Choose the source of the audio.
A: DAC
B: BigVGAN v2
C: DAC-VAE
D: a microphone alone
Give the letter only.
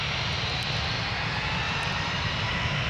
D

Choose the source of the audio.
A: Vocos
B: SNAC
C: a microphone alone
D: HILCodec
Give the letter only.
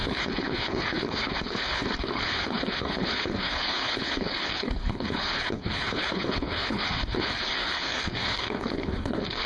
D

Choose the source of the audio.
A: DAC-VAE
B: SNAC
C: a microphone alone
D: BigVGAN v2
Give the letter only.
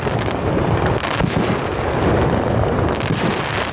C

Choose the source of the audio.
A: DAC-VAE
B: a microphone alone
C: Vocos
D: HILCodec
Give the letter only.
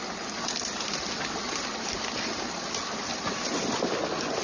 B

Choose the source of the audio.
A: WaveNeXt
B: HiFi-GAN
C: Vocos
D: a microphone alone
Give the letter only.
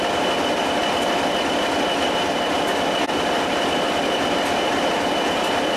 D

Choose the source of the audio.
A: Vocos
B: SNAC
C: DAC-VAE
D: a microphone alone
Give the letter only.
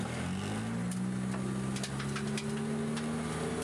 D